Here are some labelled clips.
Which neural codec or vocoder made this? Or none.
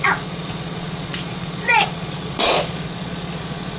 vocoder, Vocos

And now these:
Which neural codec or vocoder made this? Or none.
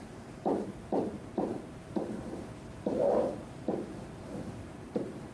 vocoder, BigVGAN v2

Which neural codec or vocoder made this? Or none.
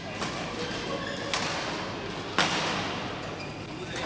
none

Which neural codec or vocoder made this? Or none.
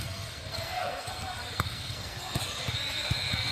codec, SNAC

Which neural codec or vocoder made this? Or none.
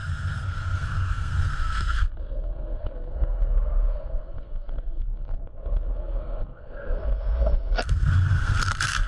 codec, SNAC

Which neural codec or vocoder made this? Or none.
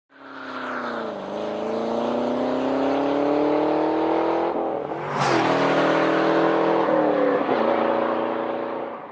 none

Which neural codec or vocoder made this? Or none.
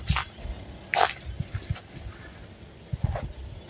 none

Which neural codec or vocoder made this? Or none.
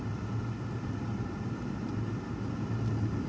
none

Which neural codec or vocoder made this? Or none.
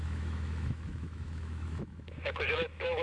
autoencoder, DAC-VAE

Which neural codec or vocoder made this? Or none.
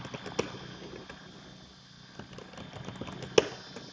none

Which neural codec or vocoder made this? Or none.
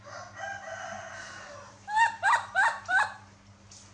none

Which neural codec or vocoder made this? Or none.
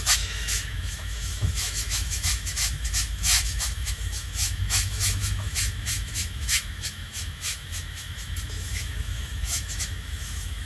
autoencoder, DAC-VAE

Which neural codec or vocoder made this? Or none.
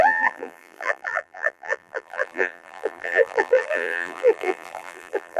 vocoder, BigVGAN v2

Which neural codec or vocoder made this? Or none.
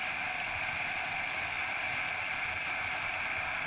none